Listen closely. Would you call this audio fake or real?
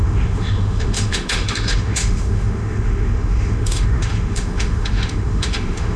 fake